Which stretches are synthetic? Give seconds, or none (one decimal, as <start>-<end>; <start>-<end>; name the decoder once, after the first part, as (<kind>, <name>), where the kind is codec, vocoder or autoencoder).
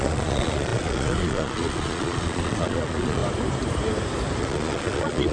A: 0.0-3.2 (vocoder, Vocos); 4.4-5.3